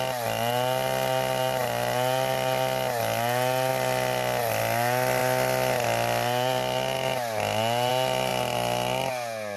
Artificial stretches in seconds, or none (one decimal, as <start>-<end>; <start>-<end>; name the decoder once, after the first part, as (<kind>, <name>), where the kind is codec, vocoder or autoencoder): none